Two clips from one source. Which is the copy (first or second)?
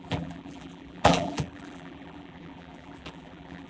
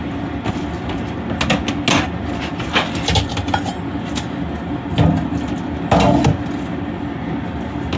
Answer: first